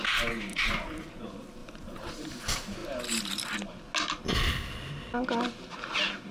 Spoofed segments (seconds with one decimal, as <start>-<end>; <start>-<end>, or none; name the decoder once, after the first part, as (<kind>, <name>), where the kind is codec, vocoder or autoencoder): 0.5-1.1 (vocoder, BigVGAN v2); 1.6-2.4